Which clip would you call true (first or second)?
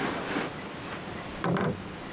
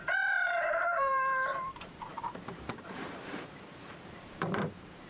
first